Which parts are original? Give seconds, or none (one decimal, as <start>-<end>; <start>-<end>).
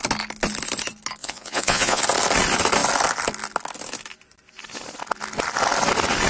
0.0-1.2; 2.0-6.3